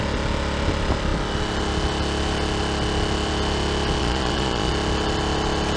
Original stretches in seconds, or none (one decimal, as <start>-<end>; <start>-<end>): 0.0-4.0; 4.7-5.8